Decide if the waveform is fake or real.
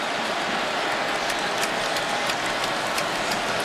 real